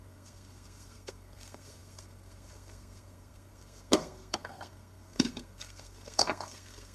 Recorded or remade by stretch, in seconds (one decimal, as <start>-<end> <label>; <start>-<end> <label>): 0.0-6.9 remade